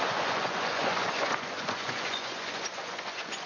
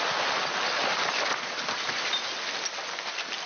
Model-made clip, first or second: first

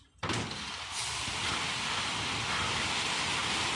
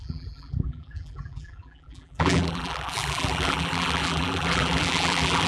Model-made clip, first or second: second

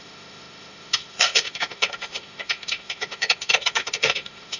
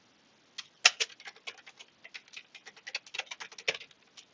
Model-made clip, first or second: first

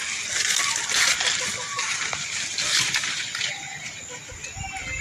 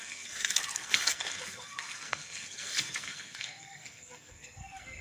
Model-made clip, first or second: second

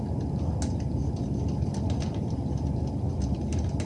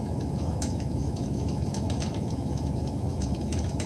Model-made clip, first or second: second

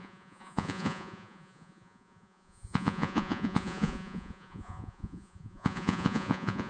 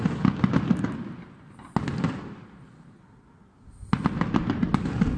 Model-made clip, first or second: first